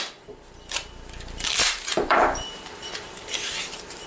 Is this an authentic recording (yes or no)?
no